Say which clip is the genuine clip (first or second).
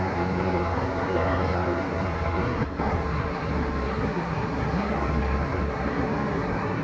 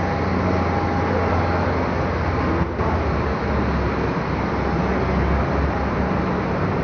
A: second